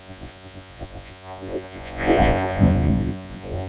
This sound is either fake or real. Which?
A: fake